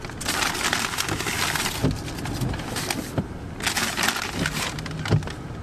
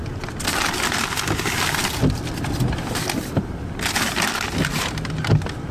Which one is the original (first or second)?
first